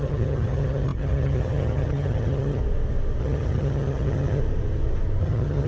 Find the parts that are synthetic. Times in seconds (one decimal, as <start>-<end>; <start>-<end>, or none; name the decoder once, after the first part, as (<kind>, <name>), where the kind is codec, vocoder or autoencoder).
0.0-2.6 (vocoder, HiFi-GAN); 3.2-4.4; 5.2-5.7